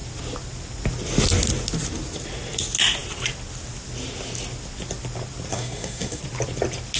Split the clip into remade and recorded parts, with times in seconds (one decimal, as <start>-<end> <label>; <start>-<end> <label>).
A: 0.0-5.5 recorded; 5.5-6.2 remade; 6.2-7.0 recorded